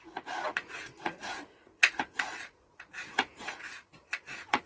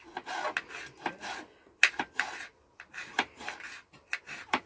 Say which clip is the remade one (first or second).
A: first